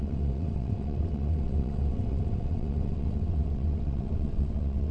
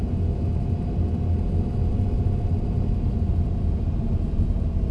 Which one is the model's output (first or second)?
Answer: first